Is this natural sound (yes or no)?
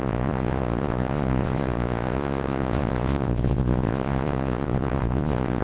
no